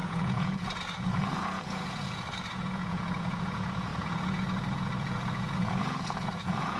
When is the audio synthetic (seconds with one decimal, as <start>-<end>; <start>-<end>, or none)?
0.0-6.8